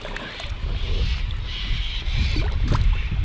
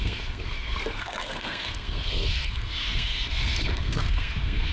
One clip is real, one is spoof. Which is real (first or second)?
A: first